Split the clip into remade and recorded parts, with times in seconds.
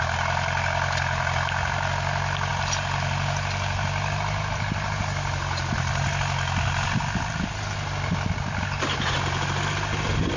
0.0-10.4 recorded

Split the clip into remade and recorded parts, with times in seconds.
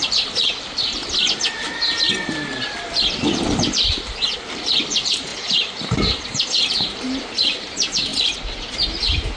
0.0-1.0 remade; 1.0-1.6 recorded; 1.6-2.5 remade; 2.5-4.5 recorded; 4.5-9.4 remade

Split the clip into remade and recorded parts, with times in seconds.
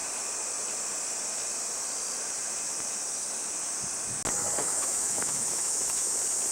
0.0-4.6 recorded; 4.6-6.1 remade; 6.1-6.5 recorded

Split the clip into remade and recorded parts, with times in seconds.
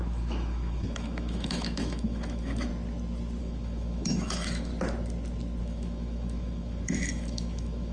0.0-2.7 remade; 2.7-3.4 recorded; 3.4-4.7 remade; 4.7-5.6 recorded; 5.6-7.9 remade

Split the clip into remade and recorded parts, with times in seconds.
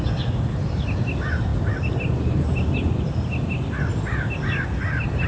0.0-5.3 recorded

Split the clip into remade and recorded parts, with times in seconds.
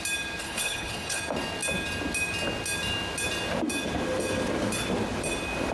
0.0-0.4 recorded; 0.4-1.2 remade; 1.2-5.7 recorded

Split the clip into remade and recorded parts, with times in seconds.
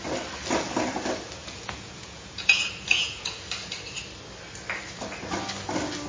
0.0-1.4 recorded; 1.4-3.3 remade; 3.3-6.1 recorded